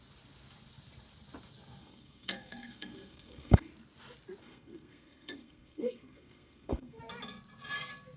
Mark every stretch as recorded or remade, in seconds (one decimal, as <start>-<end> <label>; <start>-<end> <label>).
0.0-1.8 recorded; 1.8-3.7 remade; 3.7-4.4 recorded; 4.4-7.0 remade; 7.0-8.2 recorded